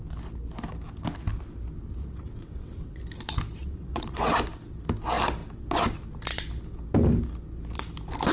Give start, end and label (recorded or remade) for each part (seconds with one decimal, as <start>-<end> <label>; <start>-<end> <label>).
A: 0.0-2.0 recorded; 2.0-3.0 remade; 3.0-3.6 recorded; 3.6-4.2 remade; 4.2-8.3 recorded